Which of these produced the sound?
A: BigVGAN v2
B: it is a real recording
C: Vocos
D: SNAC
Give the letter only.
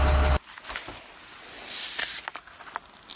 B